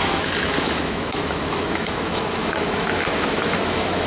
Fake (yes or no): yes